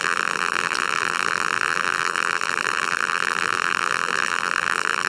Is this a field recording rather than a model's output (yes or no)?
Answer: no